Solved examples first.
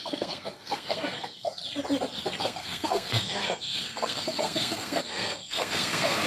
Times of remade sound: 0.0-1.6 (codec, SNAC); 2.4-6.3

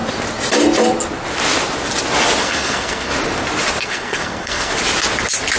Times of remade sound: 2.4-3.1 (codec, SNAC); 3.8-4.7